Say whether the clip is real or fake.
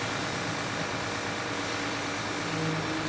real